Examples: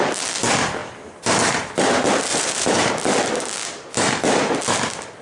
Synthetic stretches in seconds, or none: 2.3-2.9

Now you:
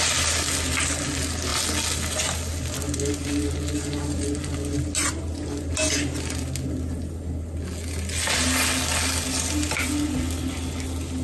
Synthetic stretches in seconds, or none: none

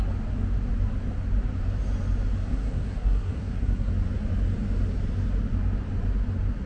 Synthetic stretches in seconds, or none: 2.5-3.9

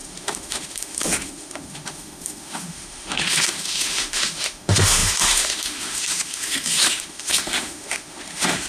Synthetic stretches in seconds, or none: 0.0-8.7

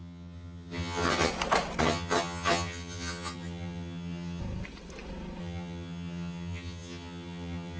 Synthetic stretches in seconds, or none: 0.0-1.3; 1.8-4.4; 5.4-7.8

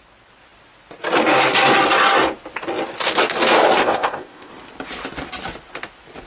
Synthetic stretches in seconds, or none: 3.8-4.5

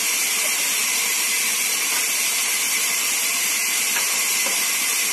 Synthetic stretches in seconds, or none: none